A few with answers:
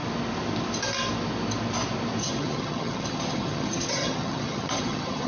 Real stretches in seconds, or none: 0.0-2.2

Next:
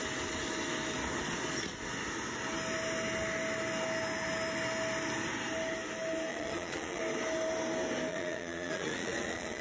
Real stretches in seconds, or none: 0.0-6.3; 7.0-8.1

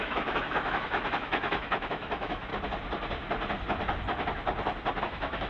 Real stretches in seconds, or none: 2.5-5.0

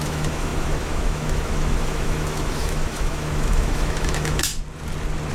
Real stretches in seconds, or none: 4.5-5.3

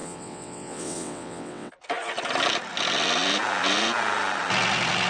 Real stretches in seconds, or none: 1.7-5.1

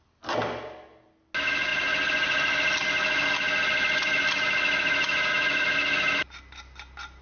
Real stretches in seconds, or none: 0.0-7.2

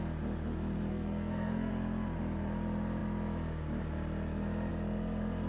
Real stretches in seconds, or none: 0.0-0.9; 1.7-5.5

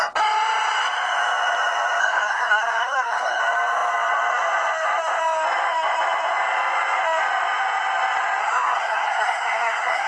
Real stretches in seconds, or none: 0.0-2.0; 3.4-8.4